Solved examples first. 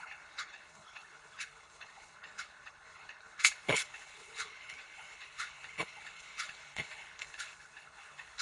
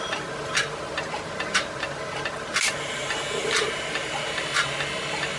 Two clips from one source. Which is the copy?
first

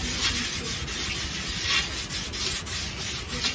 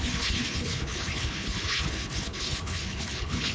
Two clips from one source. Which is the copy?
second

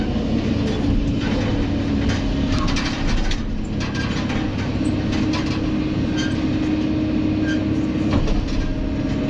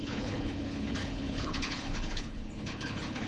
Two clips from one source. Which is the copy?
second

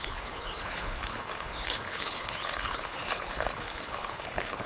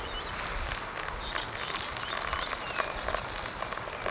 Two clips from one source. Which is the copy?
first